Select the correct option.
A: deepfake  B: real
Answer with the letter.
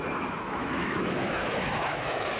A